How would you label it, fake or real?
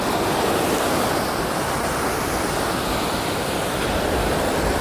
real